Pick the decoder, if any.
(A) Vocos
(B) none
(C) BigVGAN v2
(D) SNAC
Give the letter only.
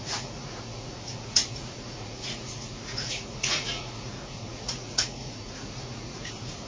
A